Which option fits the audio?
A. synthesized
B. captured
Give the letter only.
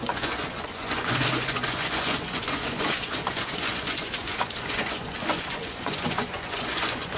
A